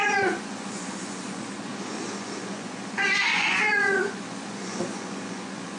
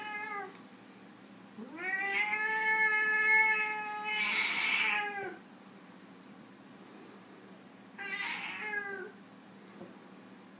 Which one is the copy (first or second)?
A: first